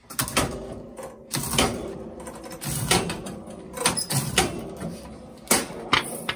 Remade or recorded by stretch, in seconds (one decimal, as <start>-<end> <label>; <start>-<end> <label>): 0.0-1.7 recorded; 1.7-5.5 remade; 5.5-6.4 recorded